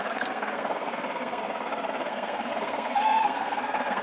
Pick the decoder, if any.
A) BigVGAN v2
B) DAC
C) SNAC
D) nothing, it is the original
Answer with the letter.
C